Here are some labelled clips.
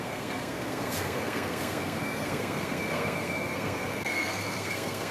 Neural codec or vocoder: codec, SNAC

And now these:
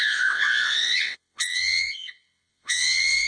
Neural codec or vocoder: vocoder, WaveNeXt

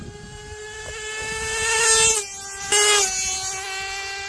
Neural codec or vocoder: none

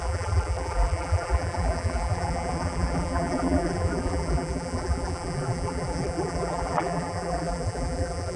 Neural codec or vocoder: vocoder, BigVGAN v2